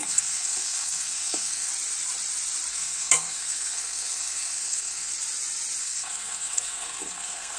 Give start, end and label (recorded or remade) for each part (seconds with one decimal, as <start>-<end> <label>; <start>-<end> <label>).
0.0-1.7 remade; 1.7-2.7 recorded; 2.7-5.1 remade; 5.1-5.8 recorded; 5.8-7.6 remade